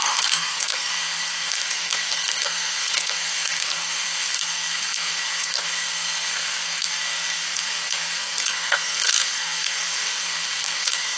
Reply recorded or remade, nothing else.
remade